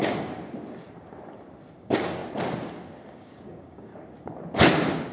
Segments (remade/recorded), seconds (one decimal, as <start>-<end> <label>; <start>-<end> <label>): 0.0-0.4 remade; 0.4-1.8 recorded; 1.8-2.2 remade; 2.2-3.1 recorded; 3.1-3.9 remade; 3.9-5.1 recorded